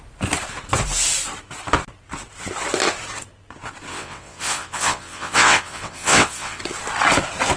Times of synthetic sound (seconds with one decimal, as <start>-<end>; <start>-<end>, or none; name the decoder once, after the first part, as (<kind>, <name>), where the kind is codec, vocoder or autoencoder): 3.9-6.6 (vocoder, WaveNeXt)